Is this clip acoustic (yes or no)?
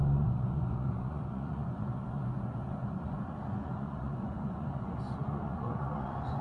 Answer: no